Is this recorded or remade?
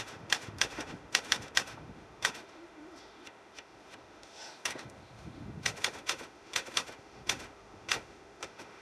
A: remade